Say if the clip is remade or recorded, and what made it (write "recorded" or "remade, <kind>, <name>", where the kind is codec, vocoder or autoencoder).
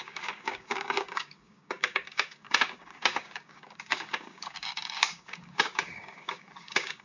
remade, codec, DAC